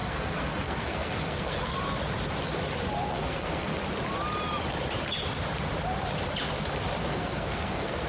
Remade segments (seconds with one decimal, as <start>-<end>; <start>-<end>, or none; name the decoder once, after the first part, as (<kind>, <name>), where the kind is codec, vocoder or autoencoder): 0.0-1.7 (codec, SNAC); 3.0-3.7; 7.0-8.1